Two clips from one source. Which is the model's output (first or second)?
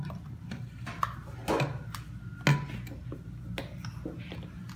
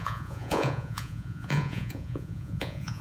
second